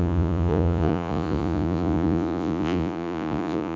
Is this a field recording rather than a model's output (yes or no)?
no